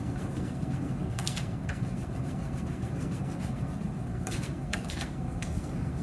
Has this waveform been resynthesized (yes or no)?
yes